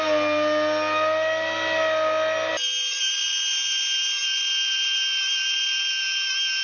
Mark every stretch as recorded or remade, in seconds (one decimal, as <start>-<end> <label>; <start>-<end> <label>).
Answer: 0.0-6.6 recorded